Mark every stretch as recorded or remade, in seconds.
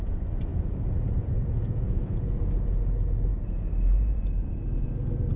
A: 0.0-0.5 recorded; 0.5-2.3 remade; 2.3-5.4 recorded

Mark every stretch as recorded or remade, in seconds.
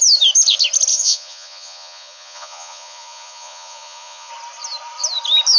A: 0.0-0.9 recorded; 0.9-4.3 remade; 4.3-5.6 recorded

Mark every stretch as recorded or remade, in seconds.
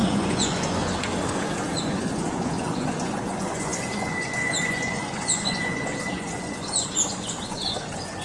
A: 0.0-8.2 remade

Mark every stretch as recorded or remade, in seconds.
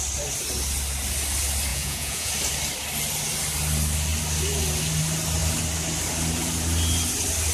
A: 0.0-1.7 recorded; 1.7-2.3 remade; 2.3-7.5 recorded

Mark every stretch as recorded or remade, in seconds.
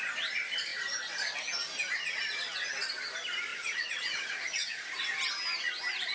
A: 0.0-3.5 recorded; 3.5-5.0 remade; 5.0-6.1 recorded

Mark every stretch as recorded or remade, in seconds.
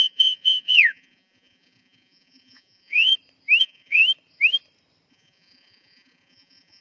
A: 0.0-3.1 remade; 3.1-3.6 recorded; 3.6-4.0 remade; 4.0-5.1 recorded; 5.1-6.8 remade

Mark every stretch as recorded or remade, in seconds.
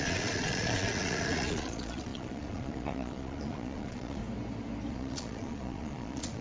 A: 0.0-4.2 remade; 4.2-4.9 recorded; 4.9-6.4 remade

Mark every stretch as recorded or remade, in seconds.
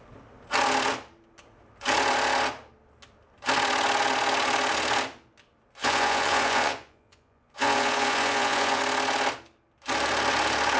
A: 0.0-5.8 recorded; 5.8-8.8 remade; 8.8-10.8 recorded